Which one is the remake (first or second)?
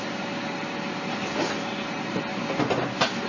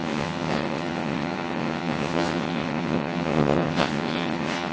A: second